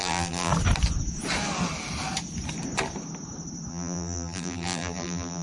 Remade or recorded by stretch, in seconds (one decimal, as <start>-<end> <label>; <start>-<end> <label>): 0.0-0.5 remade; 0.5-3.7 recorded; 3.7-5.4 remade